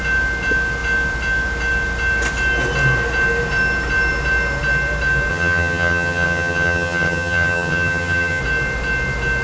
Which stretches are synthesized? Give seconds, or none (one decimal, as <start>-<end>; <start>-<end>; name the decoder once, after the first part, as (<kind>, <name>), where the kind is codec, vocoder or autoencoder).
5.3-8.4 (vocoder, HiFi-GAN)